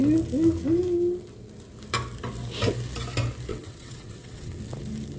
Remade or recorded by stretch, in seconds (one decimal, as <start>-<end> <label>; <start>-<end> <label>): 0.0-3.5 recorded; 3.5-4.6 remade; 4.6-5.2 recorded